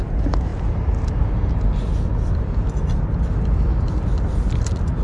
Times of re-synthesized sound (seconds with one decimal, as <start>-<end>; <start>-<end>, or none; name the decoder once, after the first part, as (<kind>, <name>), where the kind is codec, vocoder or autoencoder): none